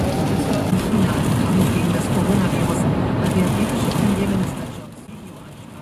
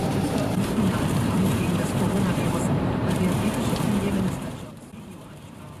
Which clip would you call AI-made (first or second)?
second